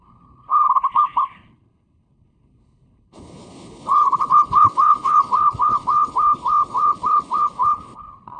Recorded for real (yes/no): no